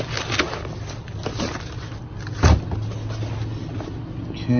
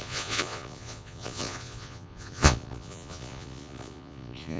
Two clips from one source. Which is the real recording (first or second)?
first